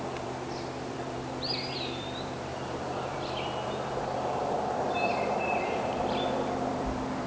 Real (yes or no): no